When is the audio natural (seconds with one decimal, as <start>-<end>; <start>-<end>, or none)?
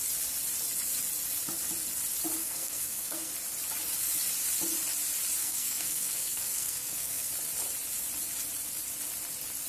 0.0-2.4; 3.3-5.4; 7.3-9.7